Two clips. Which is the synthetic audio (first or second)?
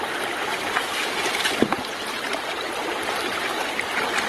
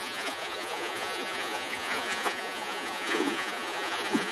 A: second